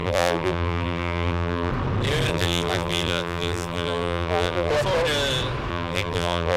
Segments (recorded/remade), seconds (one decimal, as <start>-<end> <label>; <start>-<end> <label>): 0.0-1.7 remade; 1.7-2.3 recorded; 2.3-4.7 remade; 4.7-5.7 recorded; 5.7-6.6 remade